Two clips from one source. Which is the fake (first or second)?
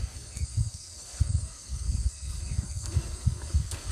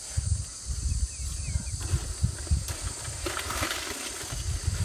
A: first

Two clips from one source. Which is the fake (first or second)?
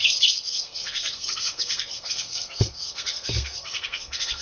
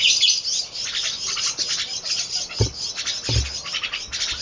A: first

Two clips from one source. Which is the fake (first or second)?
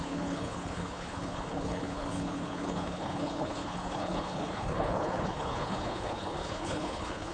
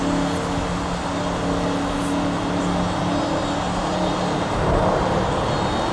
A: first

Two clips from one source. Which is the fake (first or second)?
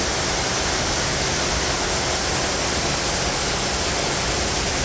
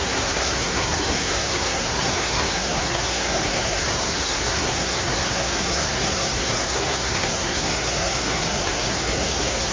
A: second